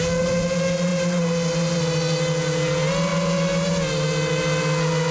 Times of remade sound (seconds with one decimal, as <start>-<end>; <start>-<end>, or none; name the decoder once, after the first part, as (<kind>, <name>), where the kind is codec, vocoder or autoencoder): none